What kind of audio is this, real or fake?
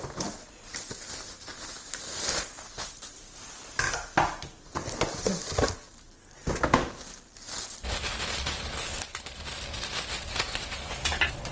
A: real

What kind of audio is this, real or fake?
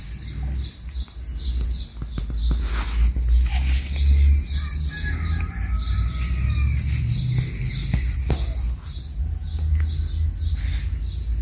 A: real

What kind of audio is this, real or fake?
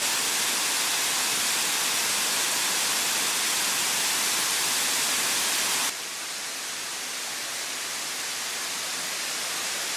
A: real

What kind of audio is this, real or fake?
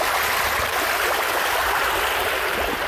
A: real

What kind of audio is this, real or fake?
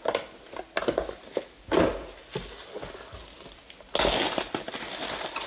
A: real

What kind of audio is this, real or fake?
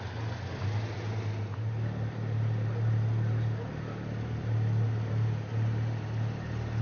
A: real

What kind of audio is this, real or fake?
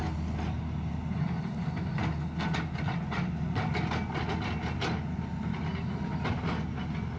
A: real